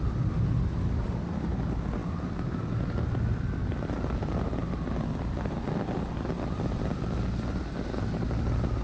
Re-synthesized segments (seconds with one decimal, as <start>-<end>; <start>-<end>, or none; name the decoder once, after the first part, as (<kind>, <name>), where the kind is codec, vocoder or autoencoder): none